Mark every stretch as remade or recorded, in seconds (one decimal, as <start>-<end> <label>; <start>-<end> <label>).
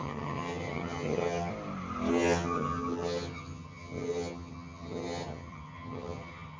0.0-1.5 remade; 1.5-2.1 recorded; 2.1-6.6 remade